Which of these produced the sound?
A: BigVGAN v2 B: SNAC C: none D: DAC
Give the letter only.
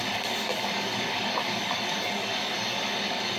D